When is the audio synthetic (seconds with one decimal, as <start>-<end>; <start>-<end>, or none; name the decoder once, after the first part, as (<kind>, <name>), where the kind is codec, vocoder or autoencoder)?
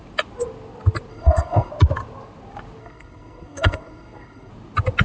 1.1-1.7 (codec, SNAC); 2.8-4.5